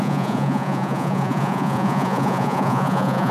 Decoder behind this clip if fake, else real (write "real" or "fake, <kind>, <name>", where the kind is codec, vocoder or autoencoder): fake, vocoder, Vocos